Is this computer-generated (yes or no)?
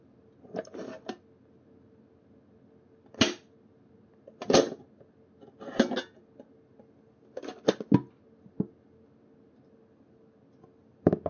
no